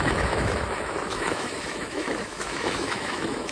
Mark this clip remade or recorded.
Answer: remade